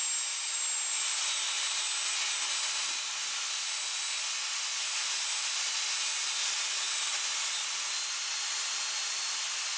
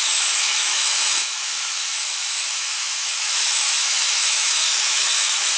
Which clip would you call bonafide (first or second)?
first